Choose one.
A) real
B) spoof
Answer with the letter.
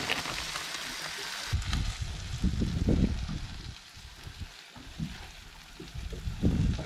A